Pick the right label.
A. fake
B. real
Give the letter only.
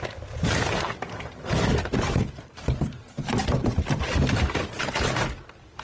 B